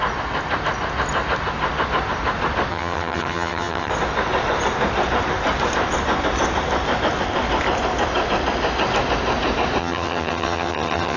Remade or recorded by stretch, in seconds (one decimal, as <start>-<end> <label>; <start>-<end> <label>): 0.0-2.7 recorded; 2.7-3.9 remade; 3.9-9.8 recorded; 9.8-11.2 remade